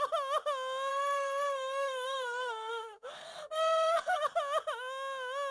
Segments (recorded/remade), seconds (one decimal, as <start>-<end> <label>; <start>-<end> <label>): 0.0-0.9 recorded; 0.9-4.2 remade; 4.2-5.5 recorded